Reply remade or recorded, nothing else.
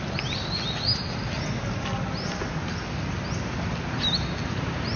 recorded